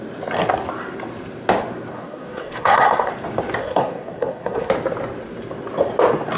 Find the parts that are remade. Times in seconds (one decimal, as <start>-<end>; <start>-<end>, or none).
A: 1.9-3.1; 3.6-4.7